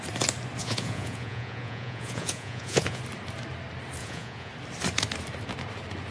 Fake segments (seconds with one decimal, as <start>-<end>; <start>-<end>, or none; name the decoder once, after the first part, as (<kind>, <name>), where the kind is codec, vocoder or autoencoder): 0.6-3.0 (vocoder, Vocos); 4.0-4.5

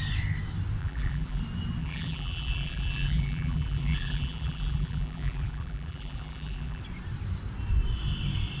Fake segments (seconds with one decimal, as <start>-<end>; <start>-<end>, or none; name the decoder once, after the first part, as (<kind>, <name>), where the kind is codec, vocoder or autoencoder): 0.8-1.4 (vocoder, BigVGAN v2); 1.8-6.8

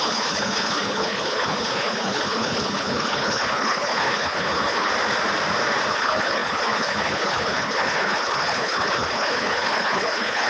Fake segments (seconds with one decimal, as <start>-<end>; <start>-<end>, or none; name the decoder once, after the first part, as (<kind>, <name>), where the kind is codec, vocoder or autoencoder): 0.0-4.9 (codec, HILCodec); 5.9-10.5

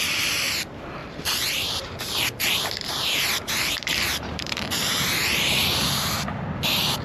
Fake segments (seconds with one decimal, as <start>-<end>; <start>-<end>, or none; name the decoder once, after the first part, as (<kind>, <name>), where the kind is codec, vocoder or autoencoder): 1.0-4.7 (vocoder, BigVGAN v2)

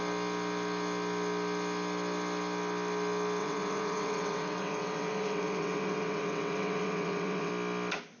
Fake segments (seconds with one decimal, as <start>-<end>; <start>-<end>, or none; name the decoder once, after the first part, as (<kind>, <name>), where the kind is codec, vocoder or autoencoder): 3.4-7.5 (vocoder, WaveNeXt)

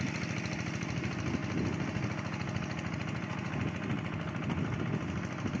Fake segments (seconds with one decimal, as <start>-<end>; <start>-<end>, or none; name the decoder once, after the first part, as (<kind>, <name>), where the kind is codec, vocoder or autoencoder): 0.0-1.4 (vocoder, BigVGAN v2); 4.8-5.6

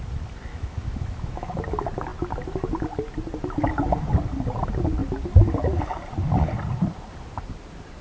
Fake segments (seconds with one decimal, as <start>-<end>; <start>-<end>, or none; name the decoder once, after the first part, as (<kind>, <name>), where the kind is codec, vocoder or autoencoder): 0.5-1.6 (autoencoder, DAC-VAE)

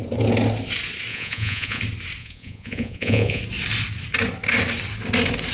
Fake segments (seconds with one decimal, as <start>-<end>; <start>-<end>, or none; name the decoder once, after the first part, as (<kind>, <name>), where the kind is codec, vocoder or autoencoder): 1.1-1.8 (vocoder, Vocos); 2.2-3.4